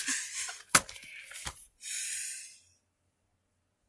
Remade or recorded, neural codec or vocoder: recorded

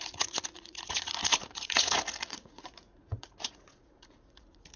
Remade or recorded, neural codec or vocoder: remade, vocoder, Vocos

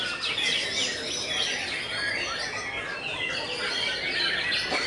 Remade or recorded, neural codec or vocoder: recorded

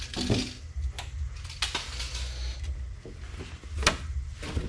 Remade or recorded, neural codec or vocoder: recorded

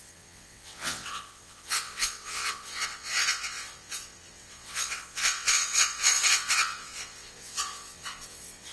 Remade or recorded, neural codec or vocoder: remade, vocoder, WaveNeXt